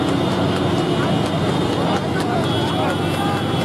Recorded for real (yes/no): yes